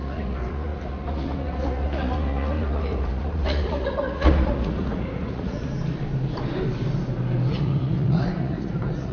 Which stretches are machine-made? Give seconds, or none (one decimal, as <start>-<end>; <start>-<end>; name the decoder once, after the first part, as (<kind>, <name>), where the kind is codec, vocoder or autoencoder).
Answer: 0.0-5.7 (vocoder, Vocos); 7.5-9.1